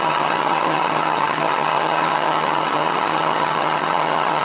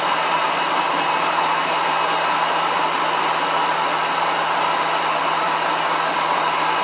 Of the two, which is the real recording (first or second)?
second